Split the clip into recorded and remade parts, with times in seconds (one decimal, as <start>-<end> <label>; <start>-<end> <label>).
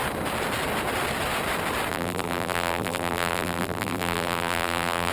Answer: 0.0-1.9 recorded; 1.9-5.1 remade